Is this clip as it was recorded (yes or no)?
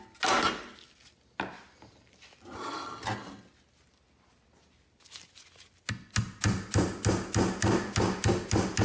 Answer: yes